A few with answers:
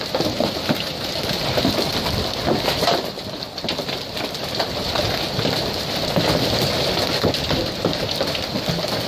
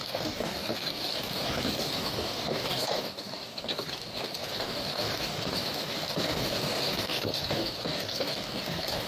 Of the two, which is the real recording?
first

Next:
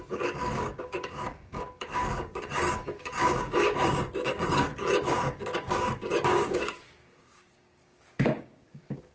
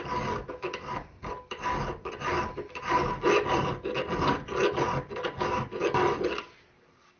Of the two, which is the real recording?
second